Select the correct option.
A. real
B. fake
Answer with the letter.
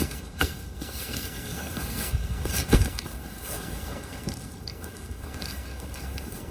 B